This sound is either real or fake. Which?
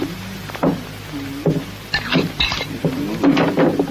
real